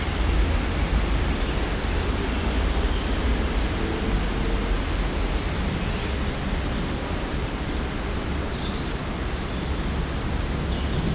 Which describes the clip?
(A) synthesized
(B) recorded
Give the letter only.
B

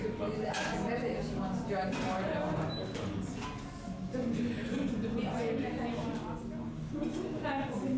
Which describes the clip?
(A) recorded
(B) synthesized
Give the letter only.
A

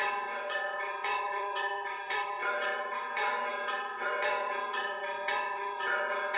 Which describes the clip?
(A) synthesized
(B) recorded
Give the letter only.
A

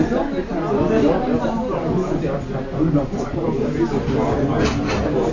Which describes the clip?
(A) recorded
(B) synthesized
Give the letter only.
A